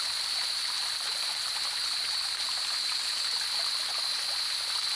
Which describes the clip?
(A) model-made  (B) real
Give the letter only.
B